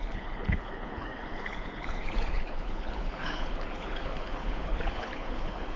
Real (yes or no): no